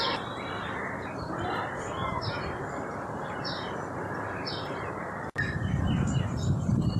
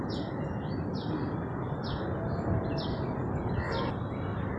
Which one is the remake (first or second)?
first